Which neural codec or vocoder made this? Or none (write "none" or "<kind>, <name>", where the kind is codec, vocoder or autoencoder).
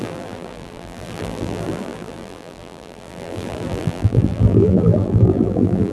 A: vocoder, BigVGAN v2